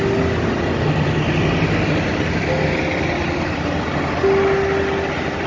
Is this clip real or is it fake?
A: real